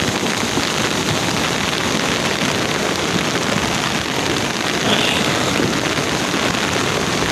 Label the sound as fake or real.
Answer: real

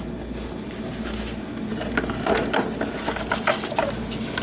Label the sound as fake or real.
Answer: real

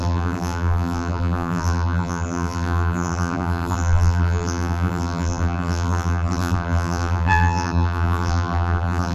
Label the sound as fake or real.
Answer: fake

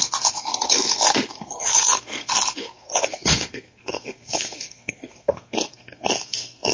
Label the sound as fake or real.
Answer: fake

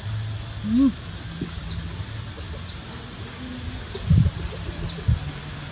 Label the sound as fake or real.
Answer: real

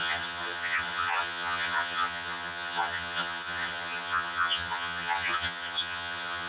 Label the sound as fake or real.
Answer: fake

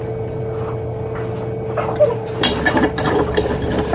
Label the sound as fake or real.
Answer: real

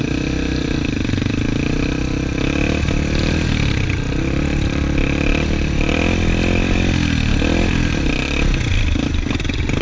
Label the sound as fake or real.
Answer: real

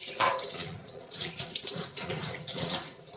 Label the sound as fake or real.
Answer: fake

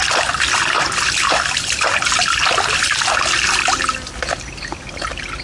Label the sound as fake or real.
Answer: real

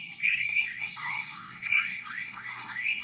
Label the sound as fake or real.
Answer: fake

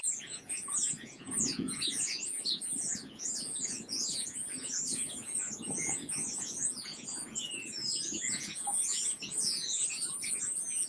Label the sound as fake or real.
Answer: fake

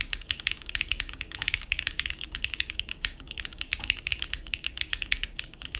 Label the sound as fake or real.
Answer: fake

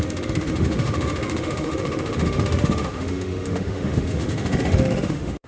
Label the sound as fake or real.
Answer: fake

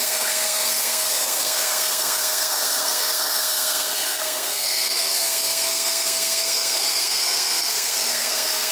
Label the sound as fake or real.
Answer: fake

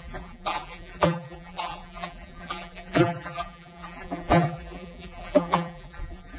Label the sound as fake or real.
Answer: fake